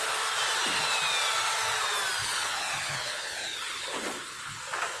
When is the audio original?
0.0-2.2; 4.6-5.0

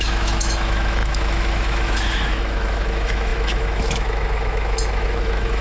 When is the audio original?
none

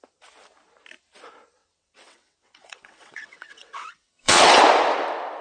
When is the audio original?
0.0-1.6; 4.6-5.4

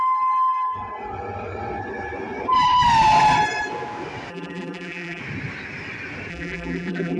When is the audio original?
0.0-4.3; 5.2-6.3

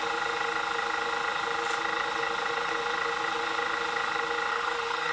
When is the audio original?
0.0-4.5

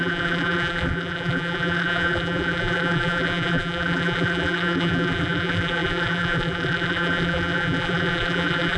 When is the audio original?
none

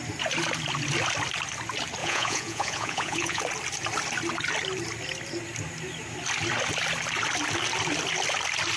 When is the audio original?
0.0-2.0; 3.4-8.8